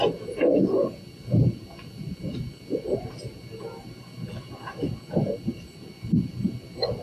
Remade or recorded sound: recorded